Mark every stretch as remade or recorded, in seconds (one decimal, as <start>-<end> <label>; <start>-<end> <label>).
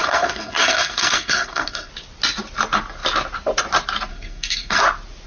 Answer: 0.0-1.9 remade; 1.9-4.1 recorded; 4.1-4.8 remade; 4.8-5.3 recorded